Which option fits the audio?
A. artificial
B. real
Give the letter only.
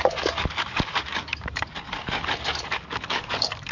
A